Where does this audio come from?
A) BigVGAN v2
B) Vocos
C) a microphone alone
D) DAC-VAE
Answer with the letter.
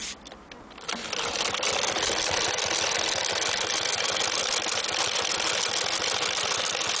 C